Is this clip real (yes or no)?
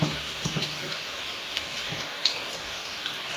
no